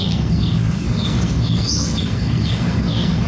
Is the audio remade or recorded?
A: remade